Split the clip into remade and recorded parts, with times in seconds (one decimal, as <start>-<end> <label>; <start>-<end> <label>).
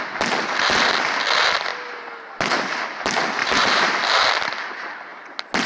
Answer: 0.0-3.4 recorded; 3.4-4.0 remade; 4.0-5.7 recorded